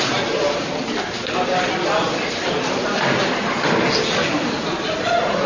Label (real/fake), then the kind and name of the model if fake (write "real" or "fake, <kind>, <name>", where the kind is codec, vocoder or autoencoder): real